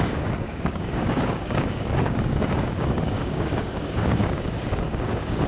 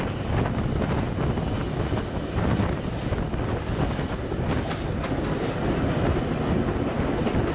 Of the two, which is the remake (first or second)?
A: first